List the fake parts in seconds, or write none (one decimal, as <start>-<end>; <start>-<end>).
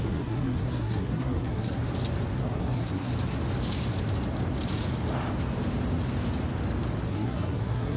0.0-1.8; 2.4-3.1; 7.1-8.0